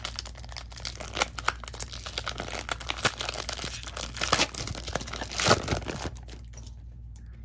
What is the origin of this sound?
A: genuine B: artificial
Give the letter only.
A